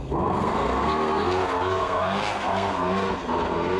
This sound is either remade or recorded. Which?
remade